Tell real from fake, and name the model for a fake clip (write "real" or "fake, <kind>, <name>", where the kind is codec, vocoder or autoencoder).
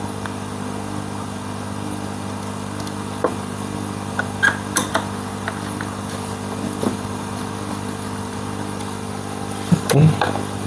real